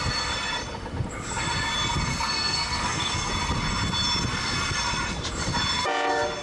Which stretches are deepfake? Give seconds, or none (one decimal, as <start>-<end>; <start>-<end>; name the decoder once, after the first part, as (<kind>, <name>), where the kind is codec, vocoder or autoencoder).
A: 2.1-3.3 (codec, SNAC)